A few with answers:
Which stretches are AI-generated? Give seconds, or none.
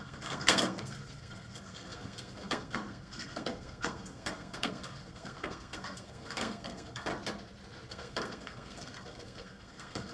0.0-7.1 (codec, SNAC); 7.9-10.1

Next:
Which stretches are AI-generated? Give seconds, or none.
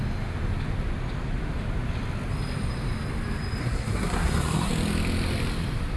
3.6-4.7 (codec, SNAC)